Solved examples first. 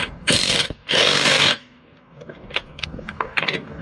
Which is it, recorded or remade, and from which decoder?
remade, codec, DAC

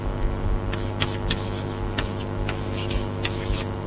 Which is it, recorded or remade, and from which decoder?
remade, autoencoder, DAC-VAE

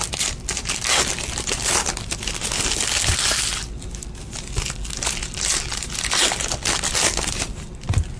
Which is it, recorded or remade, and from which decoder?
recorded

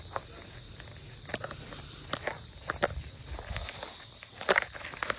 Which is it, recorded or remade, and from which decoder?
recorded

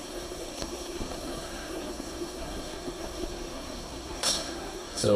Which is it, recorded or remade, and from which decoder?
remade, codec, SNAC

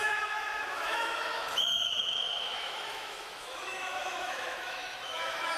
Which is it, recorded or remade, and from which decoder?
remade, autoencoder, DAC-VAE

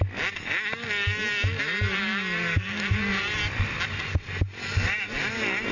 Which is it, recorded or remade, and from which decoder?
recorded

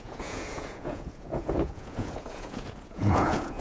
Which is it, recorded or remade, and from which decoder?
remade, vocoder, Vocos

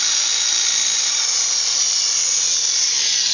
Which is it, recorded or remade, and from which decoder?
recorded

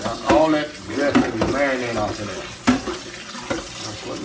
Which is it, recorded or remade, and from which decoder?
recorded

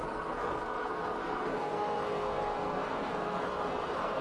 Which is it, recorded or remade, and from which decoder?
remade, codec, SNAC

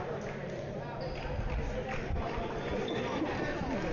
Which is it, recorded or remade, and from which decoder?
recorded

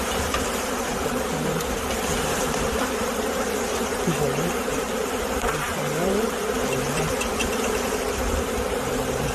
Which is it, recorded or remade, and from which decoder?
remade, vocoder, BigVGAN v2